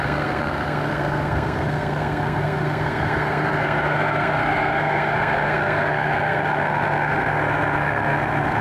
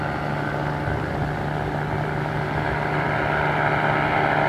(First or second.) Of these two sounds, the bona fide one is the second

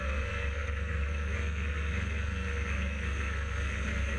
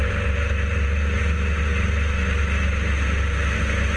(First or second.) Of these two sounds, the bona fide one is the second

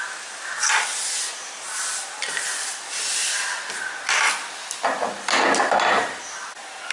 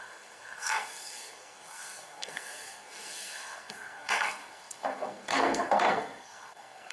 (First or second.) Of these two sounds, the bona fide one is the first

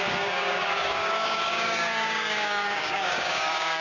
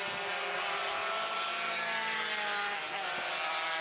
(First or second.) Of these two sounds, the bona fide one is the second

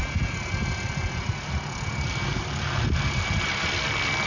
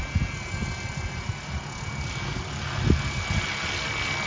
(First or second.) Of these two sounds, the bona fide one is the second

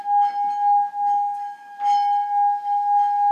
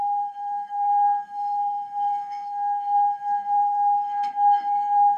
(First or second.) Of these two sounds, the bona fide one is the first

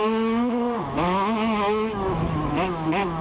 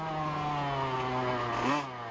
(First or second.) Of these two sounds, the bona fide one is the second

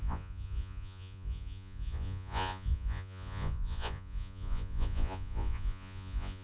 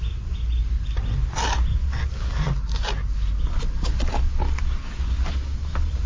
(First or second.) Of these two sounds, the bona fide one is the second